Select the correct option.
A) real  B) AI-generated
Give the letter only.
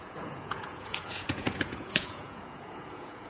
B